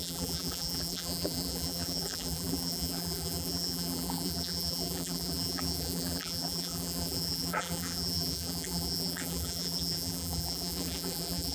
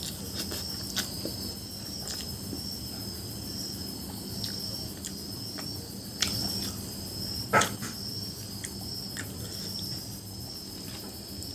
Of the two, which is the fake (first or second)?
first